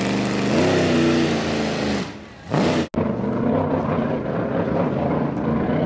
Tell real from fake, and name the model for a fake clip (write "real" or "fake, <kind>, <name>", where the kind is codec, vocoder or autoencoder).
real